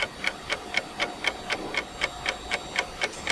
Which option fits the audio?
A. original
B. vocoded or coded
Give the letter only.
A